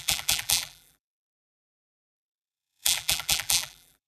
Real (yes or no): no